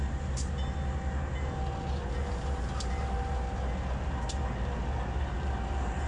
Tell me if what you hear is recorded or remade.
recorded